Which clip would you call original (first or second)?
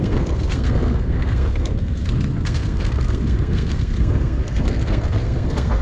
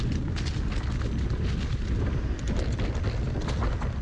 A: second